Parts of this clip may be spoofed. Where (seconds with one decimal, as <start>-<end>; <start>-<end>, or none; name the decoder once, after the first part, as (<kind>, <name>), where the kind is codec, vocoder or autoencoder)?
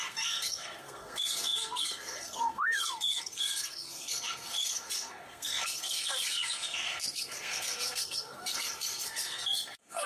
0.0-10.1 (codec, SNAC)